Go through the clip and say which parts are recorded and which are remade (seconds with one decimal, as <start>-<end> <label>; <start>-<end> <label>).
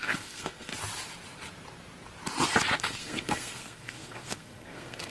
0.0-0.7 remade; 0.7-2.8 recorded; 2.8-5.1 remade